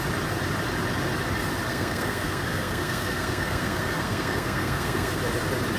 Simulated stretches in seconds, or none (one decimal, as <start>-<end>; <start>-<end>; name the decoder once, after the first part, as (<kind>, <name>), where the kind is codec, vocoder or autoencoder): 1.7-5.2 (codec, SNAC)